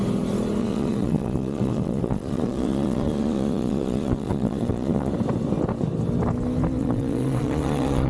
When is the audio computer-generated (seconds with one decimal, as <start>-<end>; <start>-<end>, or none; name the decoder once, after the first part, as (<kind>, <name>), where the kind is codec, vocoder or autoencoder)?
0.6-5.1 (vocoder, Vocos); 6.8-8.1